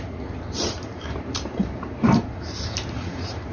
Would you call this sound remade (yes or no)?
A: yes